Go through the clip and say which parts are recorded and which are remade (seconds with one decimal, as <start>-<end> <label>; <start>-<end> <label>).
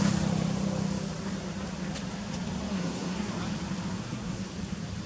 0.0-2.7 recorded; 2.7-3.3 remade; 3.3-3.9 recorded; 3.9-4.5 remade; 4.5-5.1 recorded